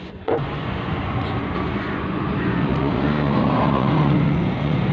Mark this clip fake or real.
fake